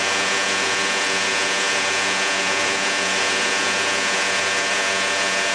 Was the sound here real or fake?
fake